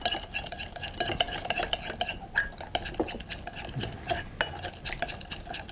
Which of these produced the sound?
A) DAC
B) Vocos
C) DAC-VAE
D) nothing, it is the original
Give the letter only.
D